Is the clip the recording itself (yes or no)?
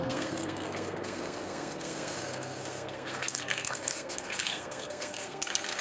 no